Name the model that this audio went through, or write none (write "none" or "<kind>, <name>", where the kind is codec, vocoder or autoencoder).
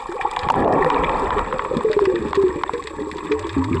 none